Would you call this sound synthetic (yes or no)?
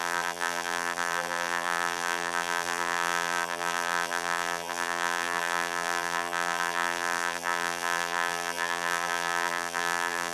yes